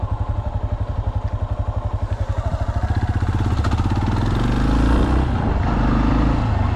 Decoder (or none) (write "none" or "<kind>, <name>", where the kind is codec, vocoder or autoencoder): none